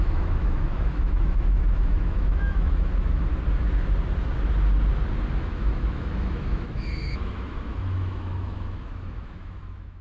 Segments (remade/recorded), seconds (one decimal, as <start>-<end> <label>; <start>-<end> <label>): 0.0-3.3 remade; 3.3-5.4 recorded; 5.4-10.0 remade